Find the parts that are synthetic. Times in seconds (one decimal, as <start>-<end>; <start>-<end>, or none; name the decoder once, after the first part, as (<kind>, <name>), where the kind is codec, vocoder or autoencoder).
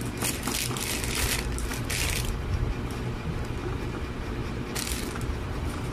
none